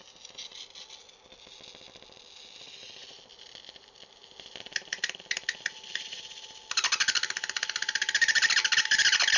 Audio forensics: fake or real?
real